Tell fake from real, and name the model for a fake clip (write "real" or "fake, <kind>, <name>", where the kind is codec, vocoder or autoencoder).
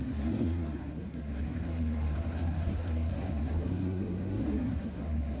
fake, codec, SNAC